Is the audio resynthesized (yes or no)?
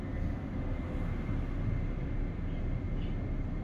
no